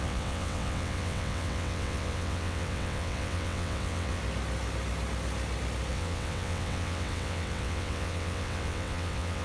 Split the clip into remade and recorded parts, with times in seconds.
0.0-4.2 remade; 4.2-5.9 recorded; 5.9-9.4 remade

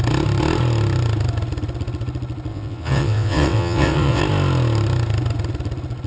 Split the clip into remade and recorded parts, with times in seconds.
0.0-2.5 recorded; 2.5-4.2 remade; 4.2-6.1 recorded

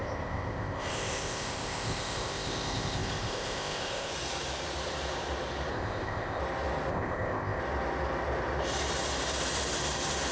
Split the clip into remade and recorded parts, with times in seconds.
0.0-4.1 remade; 4.1-5.7 recorded; 5.7-6.4 remade; 6.4-6.9 recorded; 6.9-7.6 remade; 7.6-10.3 recorded

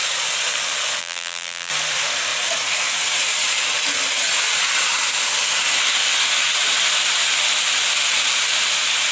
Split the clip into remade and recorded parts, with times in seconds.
0.0-1.0 recorded; 1.0-1.7 remade; 1.7-9.1 recorded

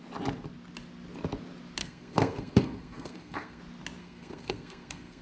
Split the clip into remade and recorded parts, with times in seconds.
0.0-1.8 recorded; 1.8-3.6 remade; 3.6-4.0 recorded; 4.0-5.2 remade

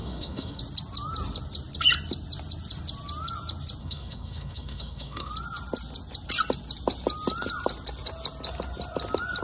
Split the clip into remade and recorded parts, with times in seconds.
0.0-0.6 remade; 0.6-3.8 recorded; 3.8-5.3 remade; 5.3-9.4 recorded